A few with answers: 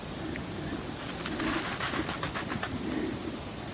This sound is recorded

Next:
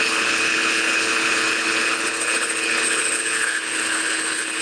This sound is remade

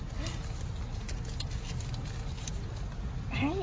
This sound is recorded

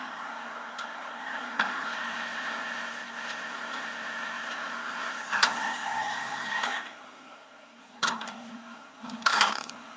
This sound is remade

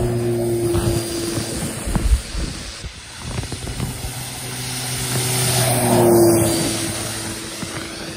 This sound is recorded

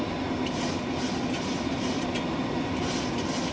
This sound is recorded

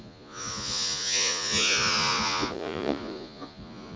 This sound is remade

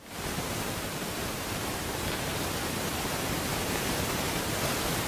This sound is remade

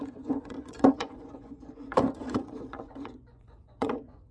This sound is remade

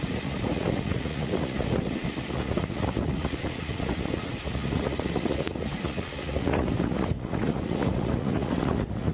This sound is remade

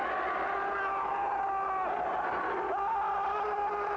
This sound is recorded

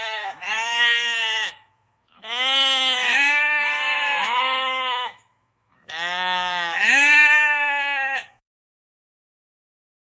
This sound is remade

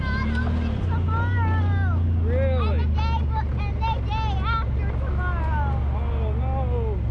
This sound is recorded